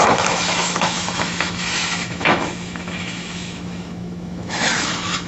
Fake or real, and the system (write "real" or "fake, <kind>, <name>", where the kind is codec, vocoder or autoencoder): fake, autoencoder, DAC-VAE